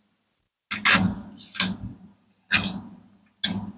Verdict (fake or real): real